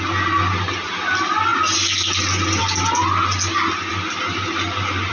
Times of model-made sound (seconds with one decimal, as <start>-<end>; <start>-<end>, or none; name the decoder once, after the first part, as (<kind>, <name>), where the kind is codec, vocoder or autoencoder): none